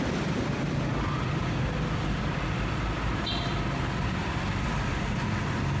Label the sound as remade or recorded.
remade